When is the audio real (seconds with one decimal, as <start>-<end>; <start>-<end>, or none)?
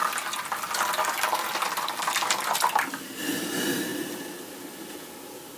0.0-3.4; 3.9-5.6